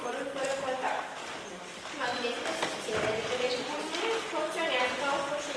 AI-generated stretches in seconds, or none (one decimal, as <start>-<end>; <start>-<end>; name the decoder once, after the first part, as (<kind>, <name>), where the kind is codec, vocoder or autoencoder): none